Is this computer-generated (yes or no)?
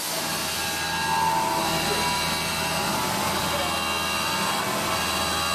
no